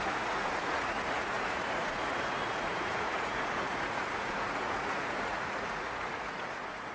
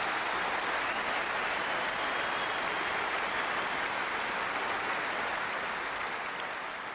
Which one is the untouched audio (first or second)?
second